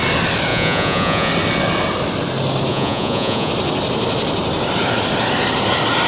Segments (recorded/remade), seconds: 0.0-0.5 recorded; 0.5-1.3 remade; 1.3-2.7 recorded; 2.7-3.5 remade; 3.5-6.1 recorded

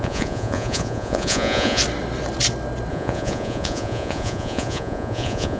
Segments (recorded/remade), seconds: 0.0-1.8 remade; 1.8-2.9 recorded; 2.9-5.6 remade

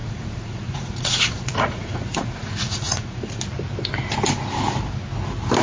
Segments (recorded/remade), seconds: 0.0-3.4 remade; 3.4-5.6 recorded

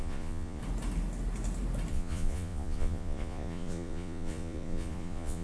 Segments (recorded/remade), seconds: 0.0-0.6 remade; 0.6-1.9 recorded; 1.9-5.4 remade

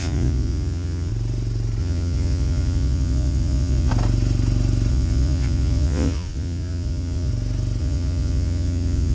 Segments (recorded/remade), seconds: 0.0-1.1 remade; 1.1-1.8 recorded; 1.8-3.9 remade; 3.9-4.9 recorded; 4.9-7.3 remade; 7.3-7.8 recorded; 7.8-9.1 remade

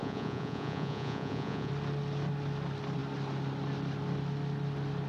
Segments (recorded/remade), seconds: 0.0-1.7 remade; 1.7-5.1 recorded